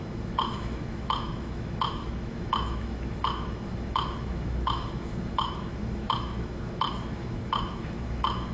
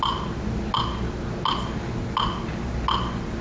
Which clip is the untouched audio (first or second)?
second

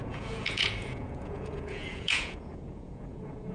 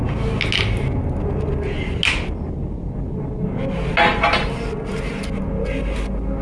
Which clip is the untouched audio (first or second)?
second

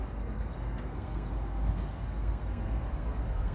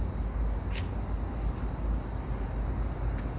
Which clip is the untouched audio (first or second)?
second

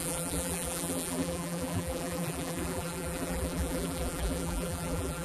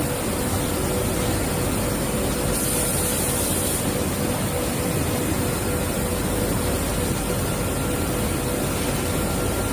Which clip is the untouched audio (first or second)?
second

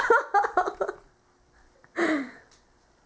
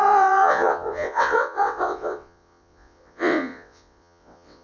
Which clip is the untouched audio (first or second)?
first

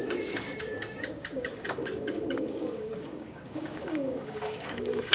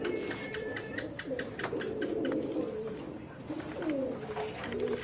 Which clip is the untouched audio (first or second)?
second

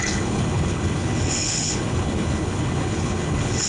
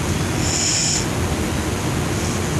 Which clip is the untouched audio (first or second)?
second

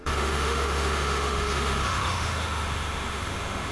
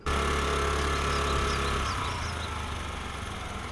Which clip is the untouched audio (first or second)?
second